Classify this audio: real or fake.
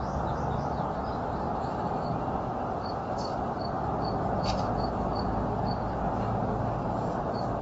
real